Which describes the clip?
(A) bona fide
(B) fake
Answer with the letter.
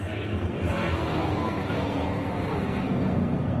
B